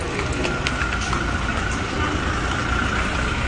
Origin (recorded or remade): recorded